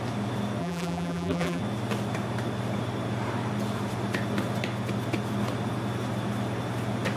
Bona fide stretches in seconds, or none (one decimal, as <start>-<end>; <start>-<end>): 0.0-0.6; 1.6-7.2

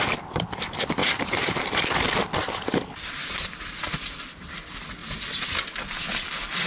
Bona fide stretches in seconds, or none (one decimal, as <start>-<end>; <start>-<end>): 0.0-1.0; 1.6-3.2; 3.7-6.7

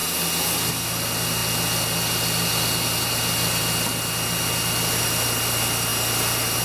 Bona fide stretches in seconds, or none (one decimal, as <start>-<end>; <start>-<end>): 0.0-6.6